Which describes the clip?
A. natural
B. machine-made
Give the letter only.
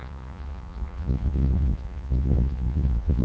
B